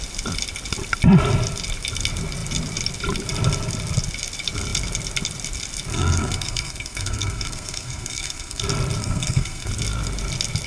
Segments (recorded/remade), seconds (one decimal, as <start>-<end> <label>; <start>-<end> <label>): 0.0-5.9 recorded; 5.9-8.6 remade; 8.6-9.0 recorded; 9.0-9.7 remade; 9.7-10.7 recorded